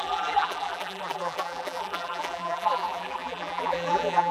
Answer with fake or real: fake